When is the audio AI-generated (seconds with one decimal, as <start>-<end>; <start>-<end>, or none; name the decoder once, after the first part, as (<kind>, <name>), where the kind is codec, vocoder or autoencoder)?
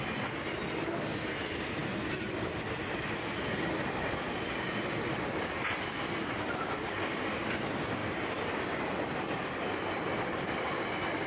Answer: none